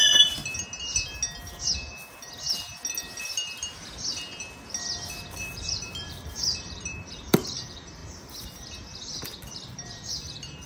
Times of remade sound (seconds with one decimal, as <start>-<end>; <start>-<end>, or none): 0.0-0.4; 5.4-8.0; 9.5-10.7